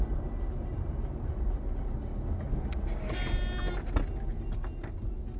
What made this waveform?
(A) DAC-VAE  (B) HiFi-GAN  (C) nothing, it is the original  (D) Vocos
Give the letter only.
C